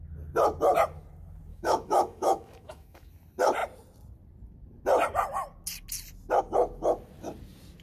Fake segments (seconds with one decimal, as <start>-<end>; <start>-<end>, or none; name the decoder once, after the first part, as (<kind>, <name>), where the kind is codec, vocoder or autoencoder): 1.5-3.1 (autoencoder, DAC-VAE)